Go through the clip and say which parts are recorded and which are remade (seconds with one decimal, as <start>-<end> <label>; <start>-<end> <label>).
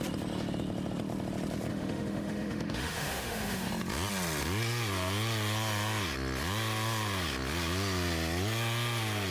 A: 0.0-1.7 recorded; 1.7-3.7 remade; 3.7-9.3 recorded